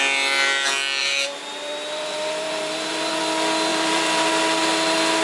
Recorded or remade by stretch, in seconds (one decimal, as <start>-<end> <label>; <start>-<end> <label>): 0.0-1.0 recorded; 1.0-3.2 remade; 3.2-3.7 recorded; 3.7-4.3 remade; 4.3-5.2 recorded